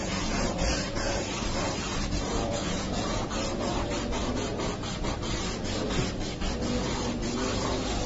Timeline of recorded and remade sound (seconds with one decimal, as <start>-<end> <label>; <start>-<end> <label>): 0.0-1.2 remade; 1.2-1.9 recorded; 1.9-3.4 remade; 3.4-8.1 recorded